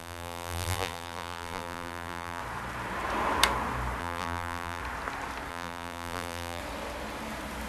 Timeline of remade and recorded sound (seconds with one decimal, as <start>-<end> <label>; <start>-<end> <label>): 0.0-2.4 remade; 2.4-4.0 recorded; 4.0-4.8 remade; 4.8-5.5 recorded; 5.5-6.6 remade; 6.6-7.7 recorded